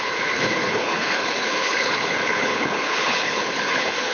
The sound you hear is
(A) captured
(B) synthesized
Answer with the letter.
B